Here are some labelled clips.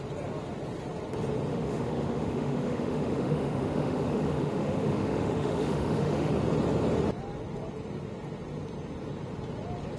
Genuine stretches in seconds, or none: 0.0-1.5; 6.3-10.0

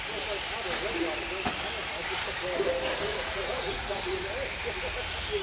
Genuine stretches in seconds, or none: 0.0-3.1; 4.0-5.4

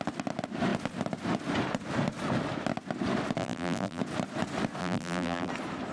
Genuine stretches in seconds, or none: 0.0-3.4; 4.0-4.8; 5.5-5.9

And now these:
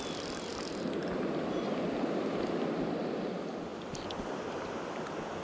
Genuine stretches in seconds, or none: 0.5-3.0

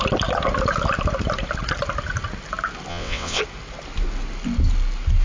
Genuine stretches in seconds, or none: 0.0-2.9; 3.4-5.2